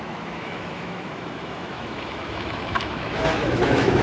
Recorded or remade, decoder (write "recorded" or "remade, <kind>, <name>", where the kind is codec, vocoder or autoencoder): remade, autoencoder, DAC-VAE